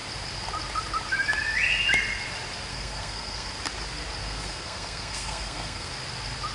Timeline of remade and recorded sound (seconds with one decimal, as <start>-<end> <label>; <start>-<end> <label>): 0.0-2.7 recorded; 2.7-3.5 remade; 3.5-4.2 recorded; 4.2-5.9 remade; 5.9-6.5 recorded